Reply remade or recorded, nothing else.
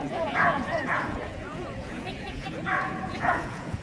remade